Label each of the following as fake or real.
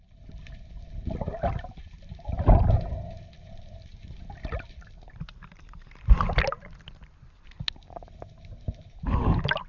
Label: real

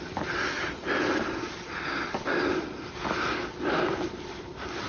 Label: real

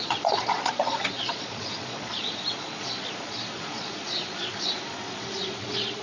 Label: fake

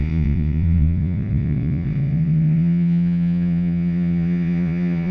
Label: fake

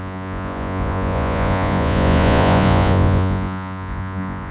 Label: fake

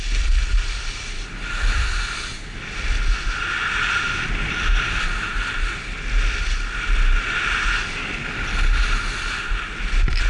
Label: real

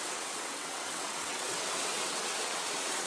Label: fake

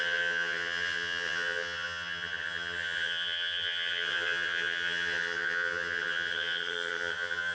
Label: fake